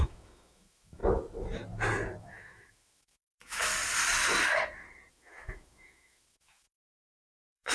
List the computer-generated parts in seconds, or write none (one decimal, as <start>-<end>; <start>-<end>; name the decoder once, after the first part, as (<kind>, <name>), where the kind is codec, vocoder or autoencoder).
0.0-1.0 (autoencoder, DAC-VAE); 2.2-3.7; 5.1-7.7